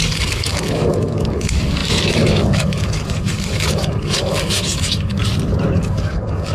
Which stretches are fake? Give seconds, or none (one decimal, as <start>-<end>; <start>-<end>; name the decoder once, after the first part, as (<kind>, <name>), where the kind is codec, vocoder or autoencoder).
0.0-5.2 (codec, DAC); 5.8-6.5